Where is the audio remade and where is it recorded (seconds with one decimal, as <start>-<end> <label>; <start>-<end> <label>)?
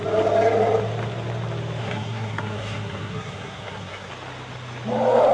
0.0-1.8 recorded; 1.8-4.1 remade; 4.1-5.3 recorded